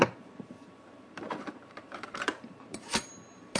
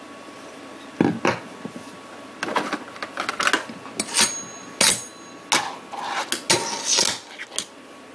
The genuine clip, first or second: second